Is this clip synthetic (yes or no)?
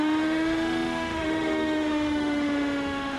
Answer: yes